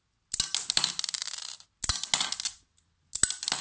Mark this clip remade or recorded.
recorded